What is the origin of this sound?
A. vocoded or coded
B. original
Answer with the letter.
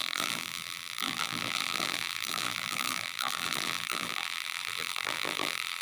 A